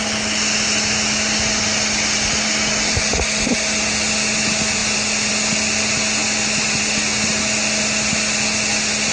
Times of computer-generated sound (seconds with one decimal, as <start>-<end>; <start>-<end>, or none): none